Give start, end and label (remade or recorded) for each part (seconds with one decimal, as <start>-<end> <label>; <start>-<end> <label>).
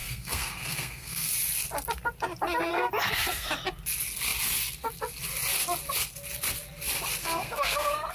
0.0-1.3 remade; 1.3-2.7 recorded; 2.7-3.5 remade; 3.5-7.2 recorded; 7.2-8.1 remade